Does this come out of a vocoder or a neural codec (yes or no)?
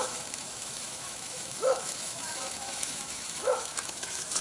yes